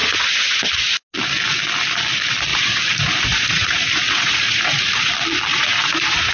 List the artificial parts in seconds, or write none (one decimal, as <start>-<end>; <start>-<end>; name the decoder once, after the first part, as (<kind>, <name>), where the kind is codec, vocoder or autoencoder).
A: 0.0-0.7 (vocoder, Vocos); 2.5-5.1; 5.5-6.3